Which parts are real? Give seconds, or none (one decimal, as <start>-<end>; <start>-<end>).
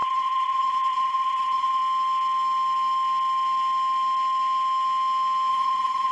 1.8-5.5